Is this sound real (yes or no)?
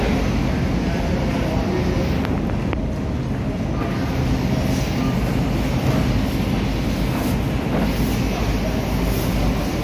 yes